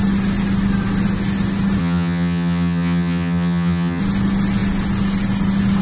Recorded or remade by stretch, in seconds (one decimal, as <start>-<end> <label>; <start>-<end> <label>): 0.0-1.8 recorded; 1.8-4.0 remade; 4.0-5.8 recorded